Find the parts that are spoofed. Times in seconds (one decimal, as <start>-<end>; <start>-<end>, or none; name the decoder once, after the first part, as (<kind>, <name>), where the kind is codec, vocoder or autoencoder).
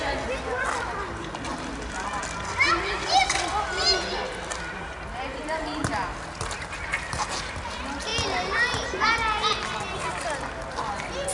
none